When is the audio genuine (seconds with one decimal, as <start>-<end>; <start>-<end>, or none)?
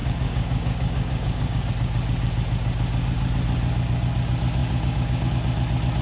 1.7-4.6; 5.3-6.0